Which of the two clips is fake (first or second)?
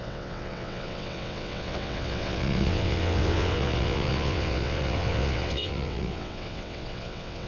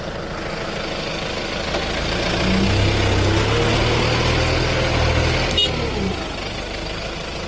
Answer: first